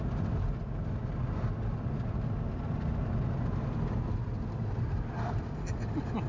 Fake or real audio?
real